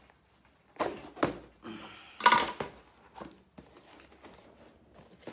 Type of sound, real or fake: real